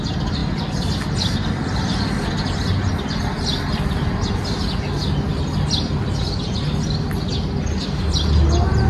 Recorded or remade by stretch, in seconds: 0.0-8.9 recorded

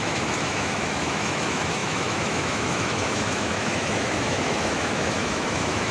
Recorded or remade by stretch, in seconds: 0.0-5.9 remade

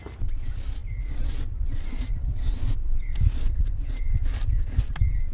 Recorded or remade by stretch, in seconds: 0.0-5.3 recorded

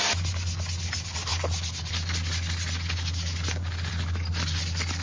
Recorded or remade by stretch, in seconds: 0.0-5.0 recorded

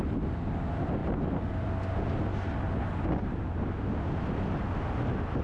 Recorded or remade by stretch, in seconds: 0.0-5.4 recorded

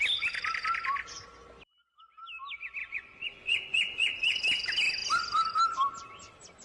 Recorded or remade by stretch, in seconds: 0.0-2.8 recorded; 2.8-4.4 remade; 4.4-6.6 recorded